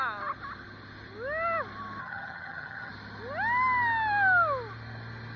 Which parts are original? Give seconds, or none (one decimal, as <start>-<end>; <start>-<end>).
0.0-2.0; 2.9-5.4